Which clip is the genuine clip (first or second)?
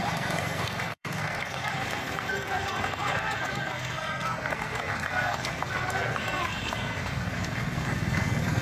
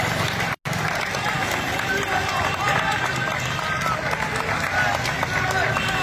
second